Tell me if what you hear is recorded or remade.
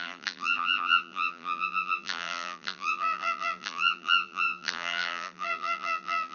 remade